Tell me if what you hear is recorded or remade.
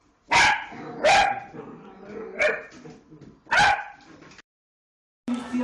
recorded